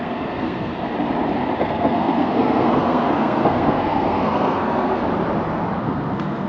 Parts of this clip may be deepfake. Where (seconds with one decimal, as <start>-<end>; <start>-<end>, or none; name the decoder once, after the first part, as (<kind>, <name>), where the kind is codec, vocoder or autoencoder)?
0.0-0.7 (codec, SNAC); 1.6-5.0; 5.8-6.5